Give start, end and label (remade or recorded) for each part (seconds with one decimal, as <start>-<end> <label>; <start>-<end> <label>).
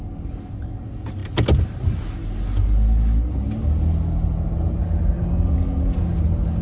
0.0-6.6 recorded